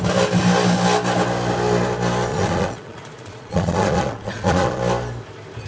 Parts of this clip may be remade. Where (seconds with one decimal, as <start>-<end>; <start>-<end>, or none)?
2.3-4.8